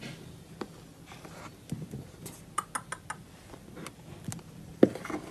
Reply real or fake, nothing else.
real